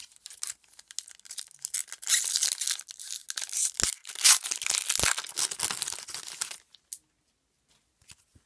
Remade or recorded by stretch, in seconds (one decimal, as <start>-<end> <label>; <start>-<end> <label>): 0.0-8.5 recorded